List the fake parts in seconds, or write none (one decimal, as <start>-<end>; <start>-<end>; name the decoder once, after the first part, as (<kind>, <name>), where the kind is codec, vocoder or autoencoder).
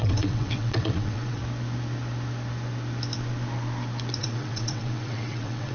0.0-1.4 (vocoder, WaveNeXt); 4.2-5.7